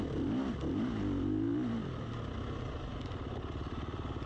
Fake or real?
real